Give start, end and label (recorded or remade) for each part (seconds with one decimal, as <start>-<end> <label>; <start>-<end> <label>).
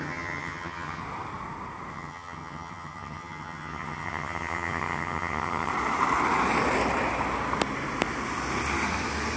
0.0-1.0 remade; 1.0-1.9 recorded; 1.9-5.7 remade; 5.7-9.4 recorded